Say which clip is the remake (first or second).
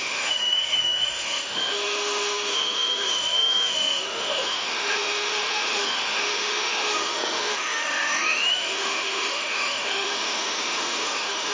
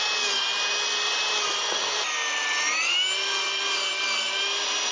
first